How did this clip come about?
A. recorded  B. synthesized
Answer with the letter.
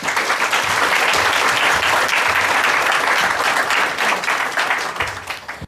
B